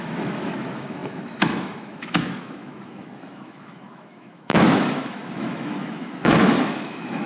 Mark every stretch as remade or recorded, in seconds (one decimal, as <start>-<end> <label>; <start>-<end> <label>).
0.0-7.3 remade